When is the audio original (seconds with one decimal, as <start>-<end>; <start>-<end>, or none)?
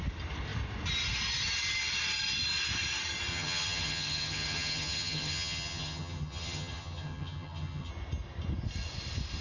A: 0.0-3.3; 7.9-9.4